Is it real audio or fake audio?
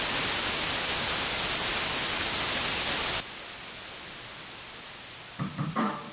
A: real